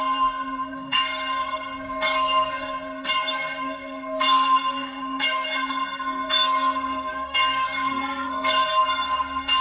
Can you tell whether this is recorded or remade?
remade